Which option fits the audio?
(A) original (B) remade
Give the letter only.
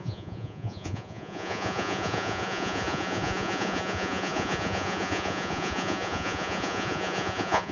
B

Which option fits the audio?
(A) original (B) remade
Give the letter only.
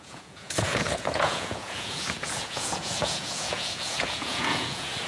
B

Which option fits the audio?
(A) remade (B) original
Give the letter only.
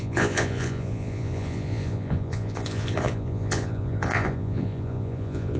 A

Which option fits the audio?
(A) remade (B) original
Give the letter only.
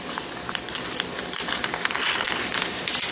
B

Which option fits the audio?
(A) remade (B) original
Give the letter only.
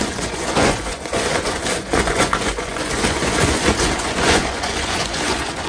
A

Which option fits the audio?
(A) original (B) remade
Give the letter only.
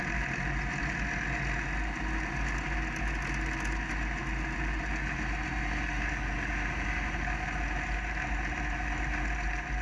A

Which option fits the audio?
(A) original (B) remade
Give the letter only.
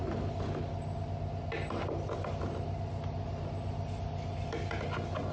A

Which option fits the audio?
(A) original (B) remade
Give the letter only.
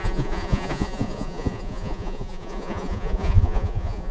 B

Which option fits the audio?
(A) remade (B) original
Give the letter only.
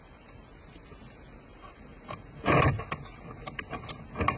B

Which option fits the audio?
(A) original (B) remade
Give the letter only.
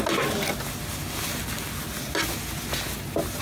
A